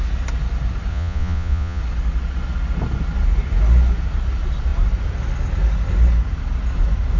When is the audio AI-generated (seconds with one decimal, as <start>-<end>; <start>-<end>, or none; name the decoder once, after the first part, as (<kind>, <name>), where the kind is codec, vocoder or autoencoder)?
0.9-1.8 (vocoder, Vocos)